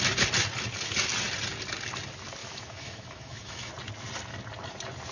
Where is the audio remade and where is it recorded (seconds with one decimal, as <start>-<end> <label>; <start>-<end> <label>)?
0.0-2.4 recorded; 2.4-3.7 remade; 3.7-5.1 recorded